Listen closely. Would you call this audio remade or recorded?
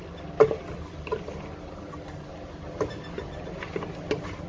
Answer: recorded